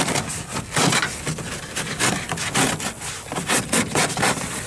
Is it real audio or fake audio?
real